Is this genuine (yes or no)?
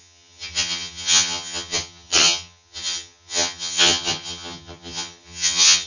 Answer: no